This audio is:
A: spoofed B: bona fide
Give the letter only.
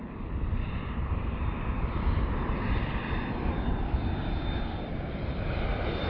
A